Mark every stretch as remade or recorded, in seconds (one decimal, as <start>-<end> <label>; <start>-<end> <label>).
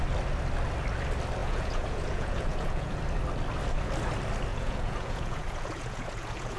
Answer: 0.0-1.4 recorded; 1.4-3.0 remade; 3.0-4.5 recorded; 4.5-6.6 remade